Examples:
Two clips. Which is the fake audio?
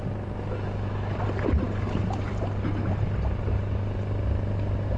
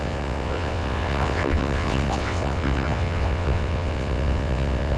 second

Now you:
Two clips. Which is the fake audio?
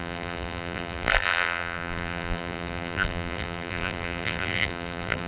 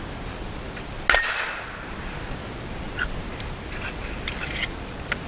first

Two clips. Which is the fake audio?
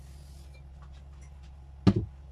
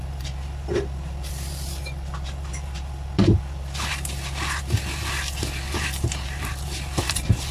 second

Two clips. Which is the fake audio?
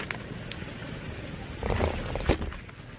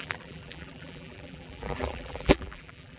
second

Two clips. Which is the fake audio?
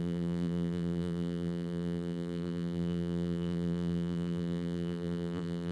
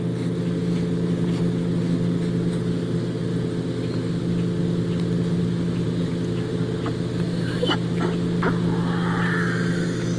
first